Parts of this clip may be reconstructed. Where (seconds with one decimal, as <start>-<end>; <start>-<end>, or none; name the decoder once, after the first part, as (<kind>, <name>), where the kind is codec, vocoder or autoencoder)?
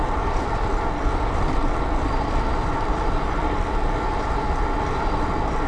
none